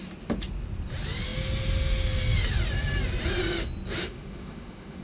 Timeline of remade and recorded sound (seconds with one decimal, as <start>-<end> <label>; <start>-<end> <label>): 0.0-4.0 recorded; 4.0-5.0 remade